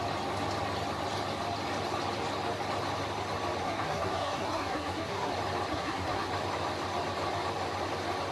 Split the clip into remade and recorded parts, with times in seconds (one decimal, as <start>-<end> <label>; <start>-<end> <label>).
0.0-3.6 recorded; 3.6-5.3 remade; 5.3-5.7 recorded; 5.7-6.3 remade; 6.3-8.3 recorded